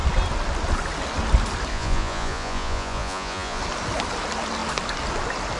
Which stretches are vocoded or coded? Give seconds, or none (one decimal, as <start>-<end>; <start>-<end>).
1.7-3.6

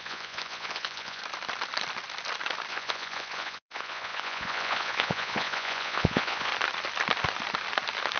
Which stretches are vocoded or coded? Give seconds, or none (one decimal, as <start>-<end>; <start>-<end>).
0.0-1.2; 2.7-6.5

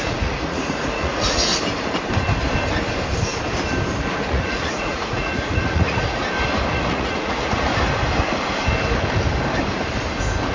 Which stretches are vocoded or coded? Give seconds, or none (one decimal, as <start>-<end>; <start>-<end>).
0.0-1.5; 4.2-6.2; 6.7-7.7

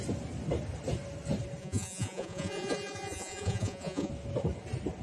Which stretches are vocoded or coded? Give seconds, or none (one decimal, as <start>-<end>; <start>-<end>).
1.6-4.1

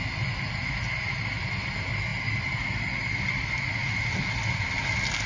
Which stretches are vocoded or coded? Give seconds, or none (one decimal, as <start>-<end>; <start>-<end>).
none

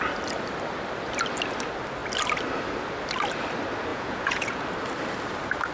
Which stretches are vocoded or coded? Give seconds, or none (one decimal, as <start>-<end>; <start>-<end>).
3.9-4.6

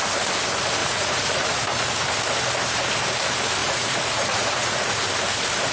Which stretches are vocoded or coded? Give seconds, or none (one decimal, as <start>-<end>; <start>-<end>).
0.8-1.6; 3.6-5.0